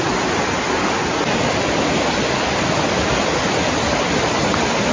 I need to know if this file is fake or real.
real